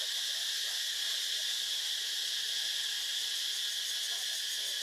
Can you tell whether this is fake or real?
real